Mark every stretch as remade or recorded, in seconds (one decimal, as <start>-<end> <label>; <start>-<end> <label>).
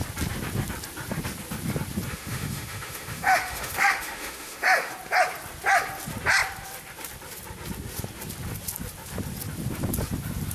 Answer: 0.0-2.1 recorded; 2.1-4.9 remade; 4.9-10.5 recorded